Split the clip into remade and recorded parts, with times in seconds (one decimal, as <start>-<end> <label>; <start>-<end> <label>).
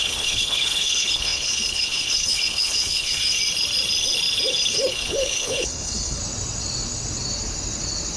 0.0-3.4 remade; 3.4-4.7 recorded; 4.7-6.2 remade; 6.2-8.2 recorded